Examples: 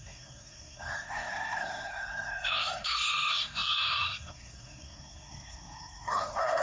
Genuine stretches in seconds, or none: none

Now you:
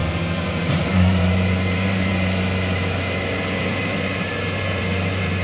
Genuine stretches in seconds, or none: 0.0-0.5; 2.1-3.7

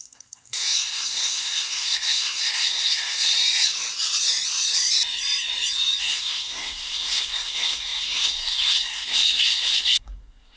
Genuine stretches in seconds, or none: 3.3-6.0

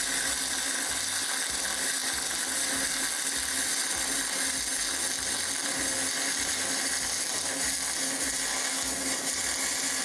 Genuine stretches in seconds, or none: 0.0-10.0

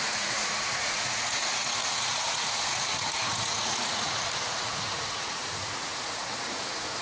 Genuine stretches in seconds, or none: none